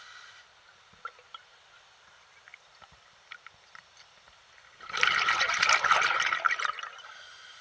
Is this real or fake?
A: real